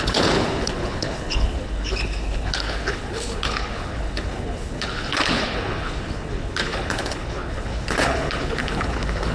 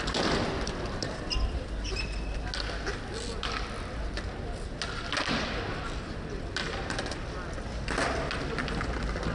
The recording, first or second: second